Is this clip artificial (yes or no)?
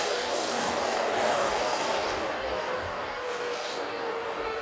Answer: yes